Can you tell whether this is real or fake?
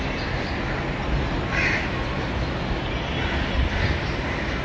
real